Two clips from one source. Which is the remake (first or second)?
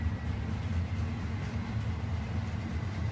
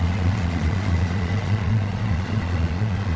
second